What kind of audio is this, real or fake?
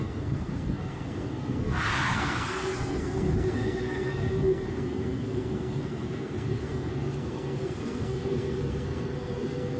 fake